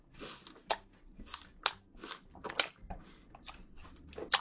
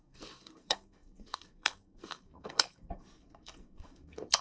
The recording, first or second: first